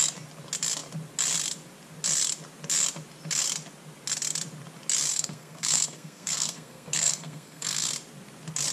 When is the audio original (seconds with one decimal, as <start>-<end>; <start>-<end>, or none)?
0.0-5.1; 7.9-8.7